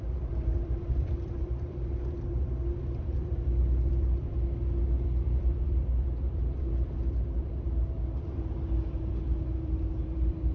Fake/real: fake